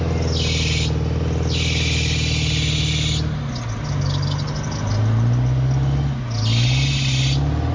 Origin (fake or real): real